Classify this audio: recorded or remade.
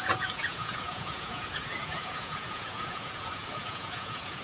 remade